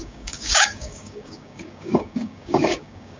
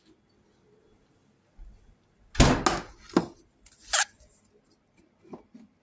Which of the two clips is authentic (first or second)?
second